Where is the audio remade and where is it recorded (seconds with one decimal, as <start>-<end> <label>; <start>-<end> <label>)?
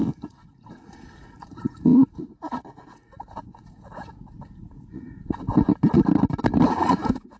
0.0-5.5 remade; 5.5-6.7 recorded; 6.7-7.4 remade